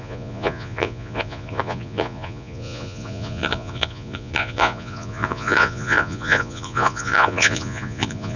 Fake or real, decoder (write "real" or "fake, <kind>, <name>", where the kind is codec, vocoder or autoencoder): fake, vocoder, Vocos